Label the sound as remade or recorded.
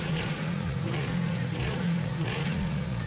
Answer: remade